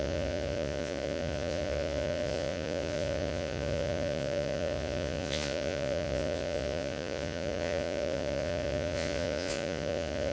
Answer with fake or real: fake